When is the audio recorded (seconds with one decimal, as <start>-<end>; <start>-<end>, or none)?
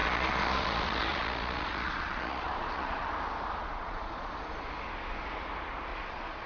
3.1-3.6; 4.3-5.9